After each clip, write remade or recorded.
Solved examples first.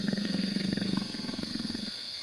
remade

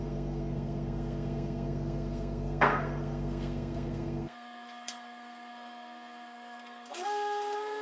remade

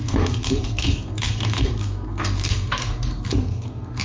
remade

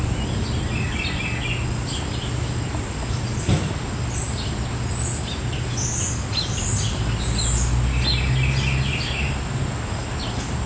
recorded